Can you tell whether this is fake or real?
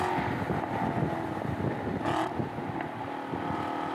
real